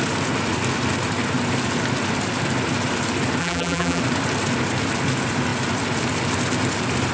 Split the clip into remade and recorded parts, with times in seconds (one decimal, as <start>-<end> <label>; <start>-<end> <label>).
0.0-3.4 recorded; 3.4-4.0 remade; 4.0-7.1 recorded